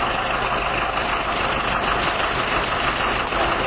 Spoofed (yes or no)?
no